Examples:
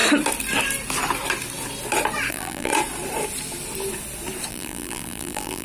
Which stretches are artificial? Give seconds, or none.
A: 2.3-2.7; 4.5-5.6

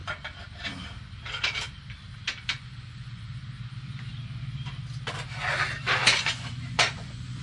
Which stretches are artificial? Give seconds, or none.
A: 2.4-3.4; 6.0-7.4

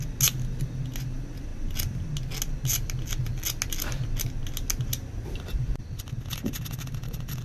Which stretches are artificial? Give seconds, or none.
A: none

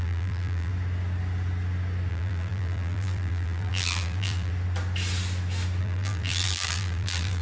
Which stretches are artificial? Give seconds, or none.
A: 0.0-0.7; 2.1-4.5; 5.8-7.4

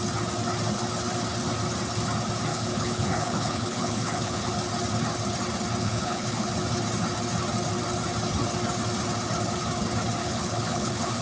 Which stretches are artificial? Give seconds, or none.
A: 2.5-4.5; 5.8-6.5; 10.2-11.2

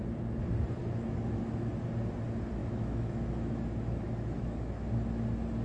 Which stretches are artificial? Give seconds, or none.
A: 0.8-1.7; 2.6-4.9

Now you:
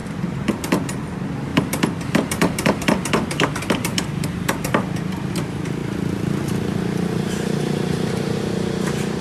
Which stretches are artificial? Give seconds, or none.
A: 1.5-2.8

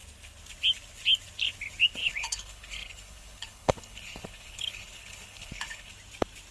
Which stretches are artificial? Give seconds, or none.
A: 2.0-5.9